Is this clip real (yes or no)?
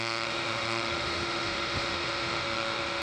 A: no